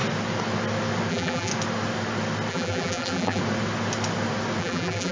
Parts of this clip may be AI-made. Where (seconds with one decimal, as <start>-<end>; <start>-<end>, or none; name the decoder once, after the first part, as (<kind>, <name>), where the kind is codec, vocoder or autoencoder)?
1.1-1.5 (vocoder, BigVGAN v2); 2.5-3.4; 4.6-5.1